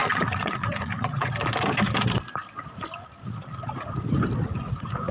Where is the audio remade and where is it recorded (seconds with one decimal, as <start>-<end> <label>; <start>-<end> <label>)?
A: 0.0-1.3 remade; 1.3-4.4 recorded; 4.4-5.1 remade